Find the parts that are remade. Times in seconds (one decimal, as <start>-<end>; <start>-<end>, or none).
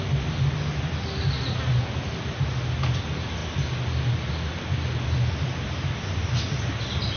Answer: none